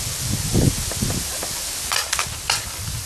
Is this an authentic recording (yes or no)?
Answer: yes